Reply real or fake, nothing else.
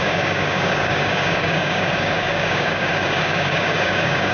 fake